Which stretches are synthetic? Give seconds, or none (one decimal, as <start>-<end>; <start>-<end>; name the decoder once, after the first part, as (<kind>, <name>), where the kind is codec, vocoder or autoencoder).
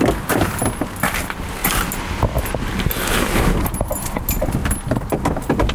none